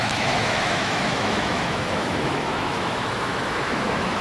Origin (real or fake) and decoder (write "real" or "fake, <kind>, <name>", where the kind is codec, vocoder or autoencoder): fake, autoencoder, DAC-VAE